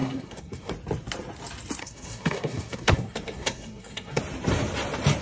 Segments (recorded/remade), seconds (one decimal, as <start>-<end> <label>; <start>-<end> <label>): 0.0-0.7 remade; 0.7-1.8 recorded; 1.8-4.2 remade; 4.2-5.2 recorded